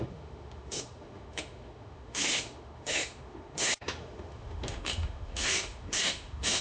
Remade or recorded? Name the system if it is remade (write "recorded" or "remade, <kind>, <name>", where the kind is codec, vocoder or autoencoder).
remade, autoencoder, DAC-VAE